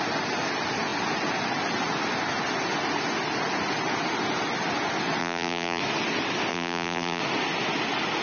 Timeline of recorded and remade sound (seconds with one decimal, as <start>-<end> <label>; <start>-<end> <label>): 0.0-5.2 recorded; 5.2-5.8 remade; 5.8-6.5 recorded; 6.5-7.2 remade; 7.2-8.2 recorded